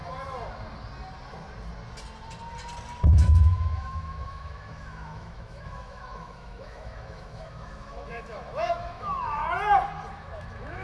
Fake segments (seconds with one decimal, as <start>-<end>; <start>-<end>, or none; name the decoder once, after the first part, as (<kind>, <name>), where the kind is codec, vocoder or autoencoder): 3.1-9.4 (autoencoder, DAC-VAE); 10.1-10.8